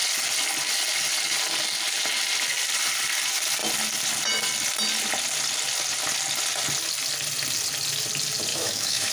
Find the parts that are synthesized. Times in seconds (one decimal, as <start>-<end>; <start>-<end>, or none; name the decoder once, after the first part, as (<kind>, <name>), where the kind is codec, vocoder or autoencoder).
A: 8.5-9.1 (autoencoder, DAC-VAE)